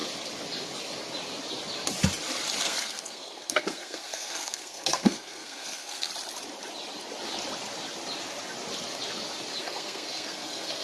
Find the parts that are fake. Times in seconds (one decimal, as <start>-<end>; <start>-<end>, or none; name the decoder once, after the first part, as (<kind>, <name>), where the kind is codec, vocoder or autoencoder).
2.6-6.1 (codec, SNAC); 9.6-10.8